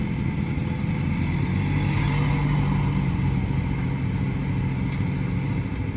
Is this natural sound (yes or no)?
yes